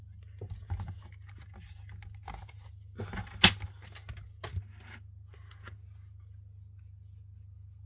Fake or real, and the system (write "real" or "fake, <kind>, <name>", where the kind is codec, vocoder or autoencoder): real